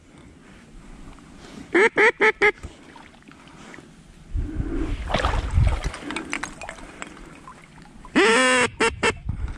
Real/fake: real